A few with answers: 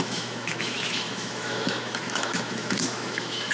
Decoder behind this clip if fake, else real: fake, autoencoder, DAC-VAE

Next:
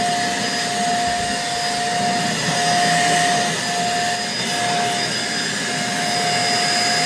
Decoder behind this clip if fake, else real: real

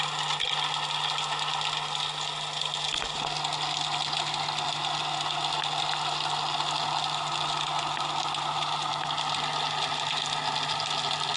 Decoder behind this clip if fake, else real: real